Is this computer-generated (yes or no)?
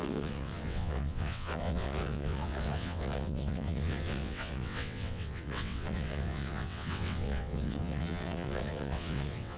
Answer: yes